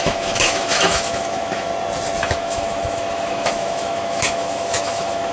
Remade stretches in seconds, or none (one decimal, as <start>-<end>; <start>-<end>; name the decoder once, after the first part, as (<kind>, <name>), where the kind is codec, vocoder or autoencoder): 0.0-1.7 (autoencoder, DAC-VAE); 2.2-5.3